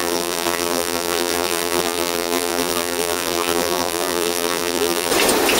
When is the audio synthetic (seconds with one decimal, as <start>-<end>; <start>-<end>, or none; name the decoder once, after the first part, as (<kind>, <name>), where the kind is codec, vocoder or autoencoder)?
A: 0.0-5.1 (vocoder, BigVGAN v2)